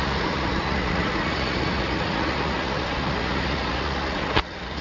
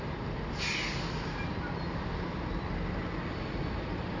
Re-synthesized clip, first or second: first